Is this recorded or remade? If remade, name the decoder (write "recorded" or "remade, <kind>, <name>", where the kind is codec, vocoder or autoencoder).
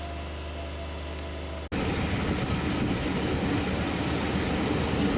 recorded